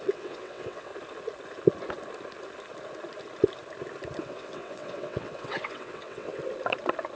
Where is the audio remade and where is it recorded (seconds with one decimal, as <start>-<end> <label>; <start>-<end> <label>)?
0.0-0.9 remade; 0.9-4.2 recorded; 4.2-6.4 remade; 6.4-7.2 recorded